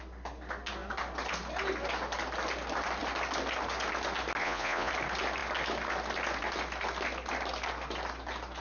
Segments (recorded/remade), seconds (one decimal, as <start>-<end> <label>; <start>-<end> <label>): 0.0-4.4 recorded; 4.4-4.9 remade; 4.9-8.6 recorded